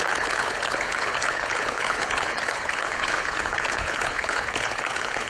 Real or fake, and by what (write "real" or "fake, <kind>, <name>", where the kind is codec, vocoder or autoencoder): fake, codec, HILCodec